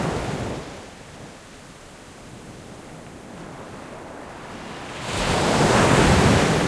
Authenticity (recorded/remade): recorded